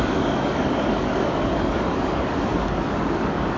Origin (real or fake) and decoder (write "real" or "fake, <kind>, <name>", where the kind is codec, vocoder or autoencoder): fake, codec, DAC